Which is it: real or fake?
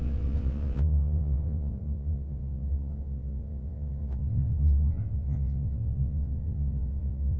fake